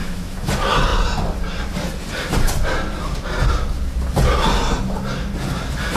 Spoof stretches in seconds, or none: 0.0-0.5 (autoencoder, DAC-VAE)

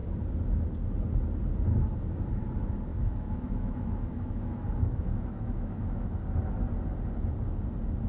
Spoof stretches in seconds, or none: 2.9-6.2 (autoencoder, DAC-VAE)

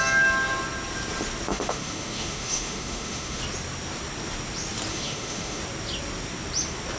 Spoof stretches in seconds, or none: 1.5-3.4 (autoencoder, DAC-VAE); 4.9-5.6

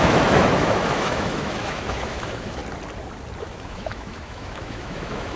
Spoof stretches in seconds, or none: 0.0-2.6 (autoencoder, DAC-VAE); 3.4-5.4

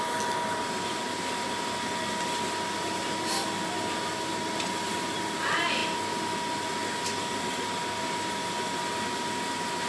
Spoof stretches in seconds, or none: none